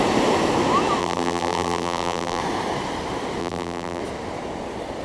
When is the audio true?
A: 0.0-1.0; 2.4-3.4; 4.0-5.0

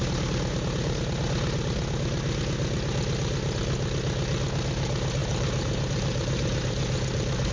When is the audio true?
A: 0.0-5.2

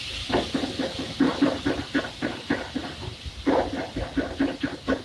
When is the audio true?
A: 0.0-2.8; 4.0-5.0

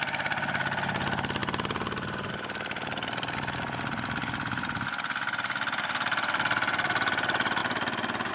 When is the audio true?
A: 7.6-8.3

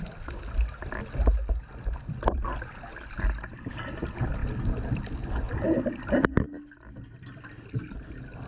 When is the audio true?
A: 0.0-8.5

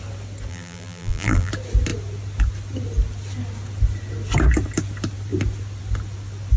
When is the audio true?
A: 0.0-0.5; 1.5-6.6

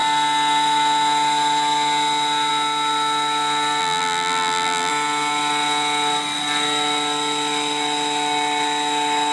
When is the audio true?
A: 0.0-3.8; 4.9-9.3